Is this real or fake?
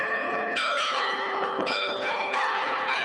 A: fake